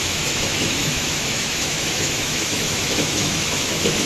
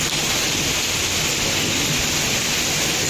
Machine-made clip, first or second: first